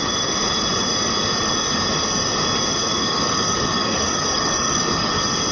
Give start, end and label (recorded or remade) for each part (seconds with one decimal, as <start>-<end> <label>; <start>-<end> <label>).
0.0-2.9 recorded; 2.9-5.1 remade; 5.1-5.5 recorded